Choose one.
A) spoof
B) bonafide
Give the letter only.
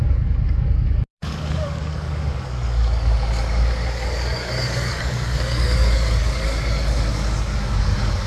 A